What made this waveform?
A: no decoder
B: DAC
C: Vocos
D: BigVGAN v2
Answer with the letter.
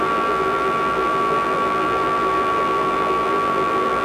D